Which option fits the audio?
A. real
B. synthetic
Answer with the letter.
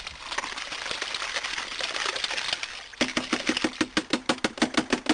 A